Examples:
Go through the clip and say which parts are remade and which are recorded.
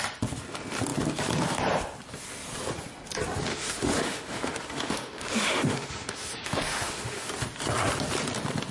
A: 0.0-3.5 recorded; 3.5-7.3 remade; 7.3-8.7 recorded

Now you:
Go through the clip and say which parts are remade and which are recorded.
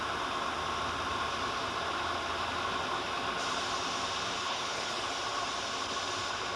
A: 0.0-4.4 recorded; 4.4-5.0 remade; 5.0-6.6 recorded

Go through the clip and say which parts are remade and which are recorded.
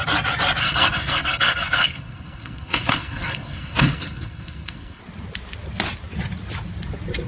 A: 0.0-0.6 recorded; 0.6-5.0 remade; 5.0-7.3 recorded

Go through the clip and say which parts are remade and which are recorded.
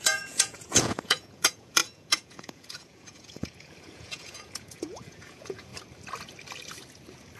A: 0.0-5.7 remade; 5.7-7.4 recorded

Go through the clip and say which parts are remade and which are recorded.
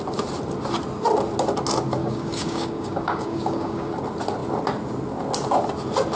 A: 0.0-2.0 recorded; 2.0-3.9 remade; 3.9-6.2 recorded